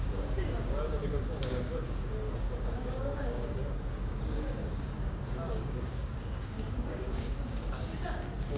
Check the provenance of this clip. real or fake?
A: fake